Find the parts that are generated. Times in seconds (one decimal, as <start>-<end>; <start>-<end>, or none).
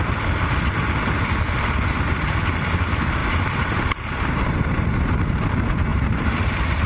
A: 5.9-6.9